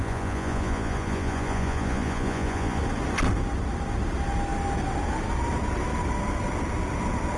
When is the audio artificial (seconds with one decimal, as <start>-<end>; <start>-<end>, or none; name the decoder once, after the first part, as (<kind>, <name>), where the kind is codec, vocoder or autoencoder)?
0.0-2.8 (vocoder, Vocos)